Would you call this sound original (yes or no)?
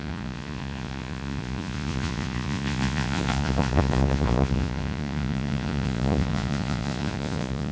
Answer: no